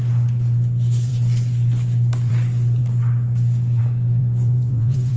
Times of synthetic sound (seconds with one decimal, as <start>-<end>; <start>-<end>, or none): 4.2-5.2

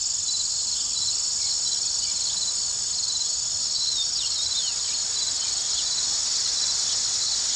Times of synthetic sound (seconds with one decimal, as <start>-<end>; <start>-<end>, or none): none

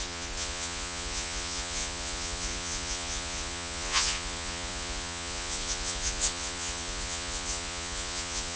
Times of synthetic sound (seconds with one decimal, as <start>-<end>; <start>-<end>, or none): 0.0-8.6

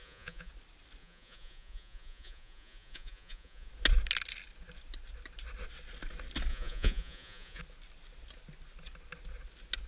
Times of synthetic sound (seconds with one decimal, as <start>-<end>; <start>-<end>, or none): 0.0-0.5; 1.0-3.7; 6.5-7.6

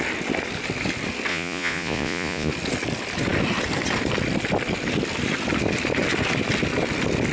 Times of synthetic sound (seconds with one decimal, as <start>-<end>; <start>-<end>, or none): 1.3-2.5

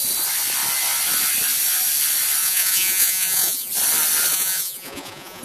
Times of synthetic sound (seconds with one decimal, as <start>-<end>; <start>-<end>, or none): 2.4-3.7; 4.3-5.4

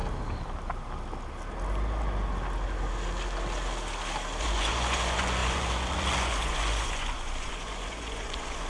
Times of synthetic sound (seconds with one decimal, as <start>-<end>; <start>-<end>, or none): 4.4-8.7

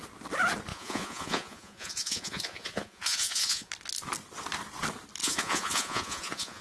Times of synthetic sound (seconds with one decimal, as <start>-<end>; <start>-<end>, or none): 0.7-3.7; 5.2-6.6